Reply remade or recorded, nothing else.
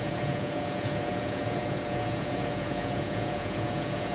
remade